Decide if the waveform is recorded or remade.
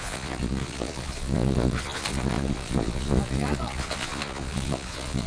remade